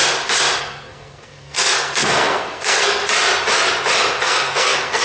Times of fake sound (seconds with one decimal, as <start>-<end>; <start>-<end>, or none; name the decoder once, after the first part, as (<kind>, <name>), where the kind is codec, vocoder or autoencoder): 0.6-3.0 (codec, SNAC); 4.2-5.0